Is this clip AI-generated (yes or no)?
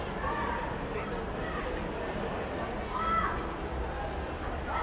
no